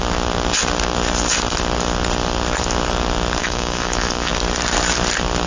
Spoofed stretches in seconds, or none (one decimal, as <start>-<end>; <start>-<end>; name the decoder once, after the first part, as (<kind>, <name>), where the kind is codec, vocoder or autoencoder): 3.4-4.3 (autoencoder, DAC-VAE)